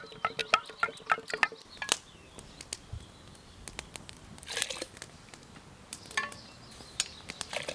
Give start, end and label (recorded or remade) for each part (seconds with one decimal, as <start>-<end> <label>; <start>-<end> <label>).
0.0-7.7 recorded